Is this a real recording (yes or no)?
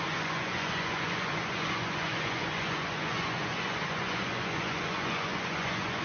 no